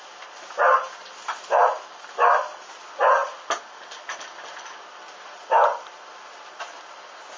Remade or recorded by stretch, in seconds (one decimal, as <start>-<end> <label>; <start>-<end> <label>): 0.0-7.4 recorded